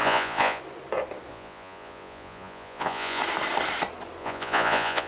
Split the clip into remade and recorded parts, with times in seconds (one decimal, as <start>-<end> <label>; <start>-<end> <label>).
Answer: 0.0-0.6 remade; 0.6-1.3 recorded; 1.3-3.2 remade; 3.2-4.2 recorded; 4.2-5.1 remade